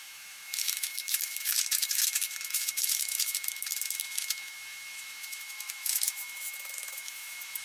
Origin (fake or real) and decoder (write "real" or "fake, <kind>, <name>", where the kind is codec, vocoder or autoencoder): fake, autoencoder, DAC-VAE